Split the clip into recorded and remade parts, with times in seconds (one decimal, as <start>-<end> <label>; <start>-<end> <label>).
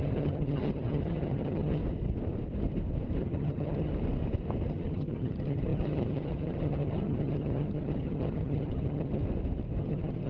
0.0-1.8 remade; 1.8-3.2 recorded; 3.2-3.9 remade; 3.9-4.7 recorded; 4.7-9.2 remade; 9.2-9.8 recorded; 9.8-10.3 remade